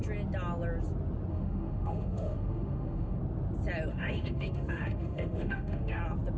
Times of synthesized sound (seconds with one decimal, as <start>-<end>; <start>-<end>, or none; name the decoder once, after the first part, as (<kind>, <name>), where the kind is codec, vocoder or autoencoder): 1.3-3.2 (autoencoder, DAC-VAE); 3.9-6.0